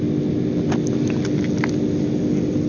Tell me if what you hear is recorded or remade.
recorded